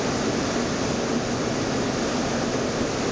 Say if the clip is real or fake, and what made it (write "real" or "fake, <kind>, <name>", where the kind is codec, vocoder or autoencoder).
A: real